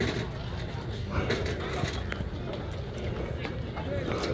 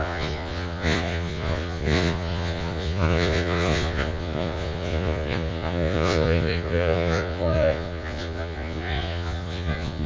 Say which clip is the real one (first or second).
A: first